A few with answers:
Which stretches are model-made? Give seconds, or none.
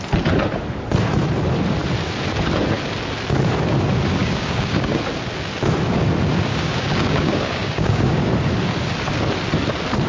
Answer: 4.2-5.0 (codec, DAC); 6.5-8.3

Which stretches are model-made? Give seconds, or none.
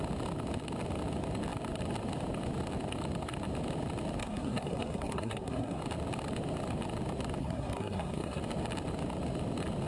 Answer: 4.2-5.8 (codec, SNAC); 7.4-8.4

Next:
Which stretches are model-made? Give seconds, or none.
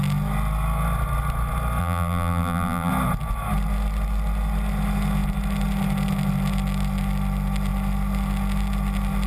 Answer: 1.8-2.9 (vocoder, BigVGAN v2)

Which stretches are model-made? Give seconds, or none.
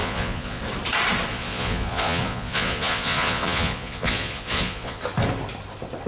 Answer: 0.0-0.6 (vocoder, Vocos); 1.3-5.0